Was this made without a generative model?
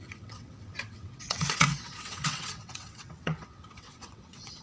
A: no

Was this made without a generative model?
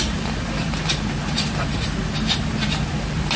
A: yes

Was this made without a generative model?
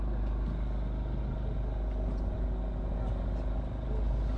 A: yes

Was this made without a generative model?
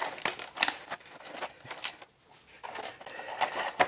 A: yes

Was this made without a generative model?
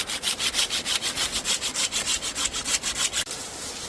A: yes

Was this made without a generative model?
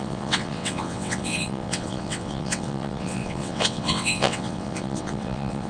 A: no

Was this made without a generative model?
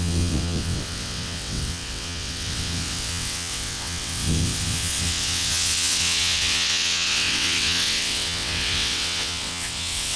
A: no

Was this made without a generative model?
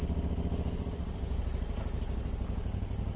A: yes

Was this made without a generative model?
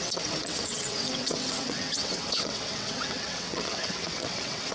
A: no